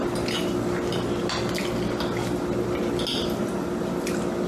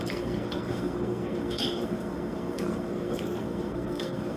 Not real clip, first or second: second